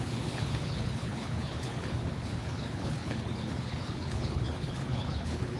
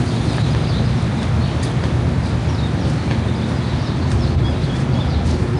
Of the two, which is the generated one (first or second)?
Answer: first